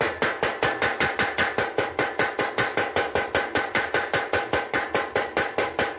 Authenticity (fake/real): real